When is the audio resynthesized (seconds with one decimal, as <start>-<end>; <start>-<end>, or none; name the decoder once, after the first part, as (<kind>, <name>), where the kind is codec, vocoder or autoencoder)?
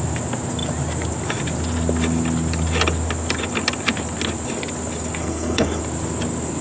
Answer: 5.2-5.8 (codec, SNAC)